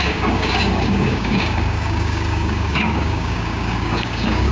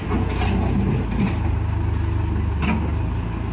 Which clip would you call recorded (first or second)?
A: second